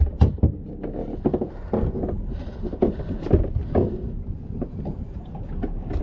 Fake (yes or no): no